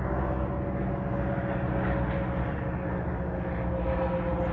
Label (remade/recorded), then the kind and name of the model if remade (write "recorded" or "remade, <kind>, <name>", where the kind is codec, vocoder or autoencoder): recorded